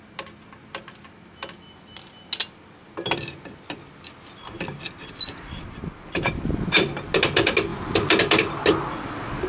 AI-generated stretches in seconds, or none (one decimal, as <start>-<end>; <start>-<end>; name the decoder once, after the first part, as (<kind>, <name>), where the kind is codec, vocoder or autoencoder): none